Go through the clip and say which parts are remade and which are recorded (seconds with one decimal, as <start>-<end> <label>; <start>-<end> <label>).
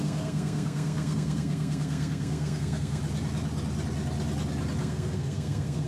0.0-3.0 remade; 3.0-4.8 recorded; 4.8-5.9 remade